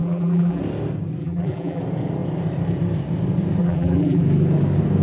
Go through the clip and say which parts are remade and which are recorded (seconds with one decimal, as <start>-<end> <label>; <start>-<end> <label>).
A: 0.0-0.6 remade; 0.6-1.2 recorded; 1.2-1.8 remade; 1.8-3.6 recorded; 3.6-4.2 remade; 4.2-5.0 recorded